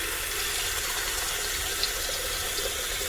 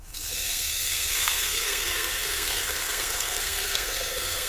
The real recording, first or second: first